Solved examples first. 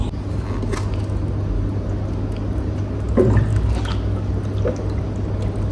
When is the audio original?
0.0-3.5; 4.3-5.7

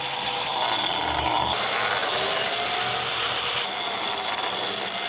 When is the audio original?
0.0-5.1